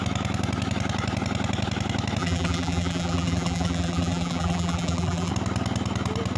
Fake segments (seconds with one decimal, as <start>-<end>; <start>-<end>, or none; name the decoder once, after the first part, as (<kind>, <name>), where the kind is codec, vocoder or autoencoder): 2.2-5.3 (vocoder, BigVGAN v2)